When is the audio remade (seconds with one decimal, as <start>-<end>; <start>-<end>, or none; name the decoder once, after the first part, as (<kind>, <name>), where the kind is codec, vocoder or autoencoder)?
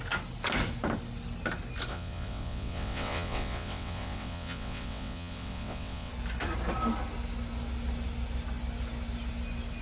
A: 1.9-6.1 (vocoder, WaveNeXt)